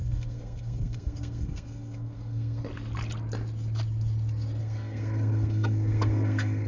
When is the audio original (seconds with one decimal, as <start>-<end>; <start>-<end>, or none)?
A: 2.6-4.6